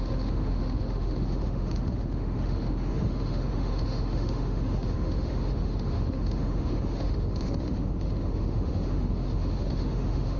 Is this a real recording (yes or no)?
no